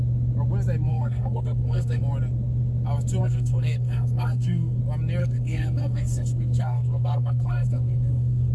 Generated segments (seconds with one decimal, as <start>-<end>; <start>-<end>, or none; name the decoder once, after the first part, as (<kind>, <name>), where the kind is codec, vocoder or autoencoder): 0.9-2.0 (codec, SNAC); 3.2-4.8; 5.2-8.5